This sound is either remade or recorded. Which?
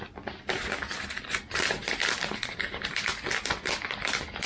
recorded